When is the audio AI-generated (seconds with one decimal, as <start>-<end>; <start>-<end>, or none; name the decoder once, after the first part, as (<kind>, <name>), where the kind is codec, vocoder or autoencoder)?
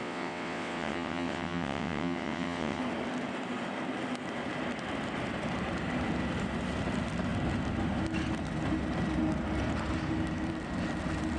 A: 0.0-2.8 (vocoder, WaveNeXt)